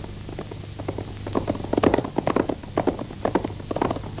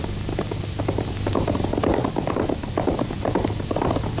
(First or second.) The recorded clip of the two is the first